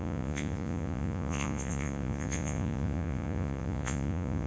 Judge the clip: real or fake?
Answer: fake